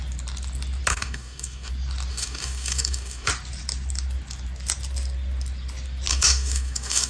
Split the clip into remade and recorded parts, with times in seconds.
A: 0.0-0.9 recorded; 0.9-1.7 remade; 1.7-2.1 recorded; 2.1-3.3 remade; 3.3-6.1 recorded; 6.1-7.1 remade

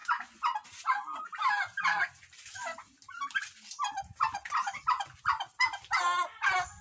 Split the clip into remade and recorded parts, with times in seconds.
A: 0.0-6.8 recorded

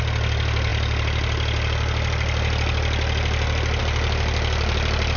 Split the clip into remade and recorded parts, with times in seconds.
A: 0.0-5.2 recorded